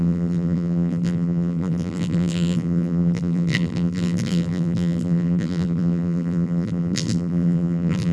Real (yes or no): no